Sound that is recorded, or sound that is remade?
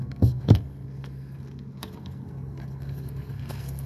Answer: remade